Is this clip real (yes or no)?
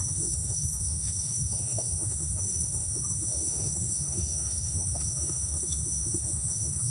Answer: no